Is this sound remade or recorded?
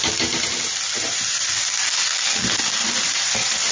recorded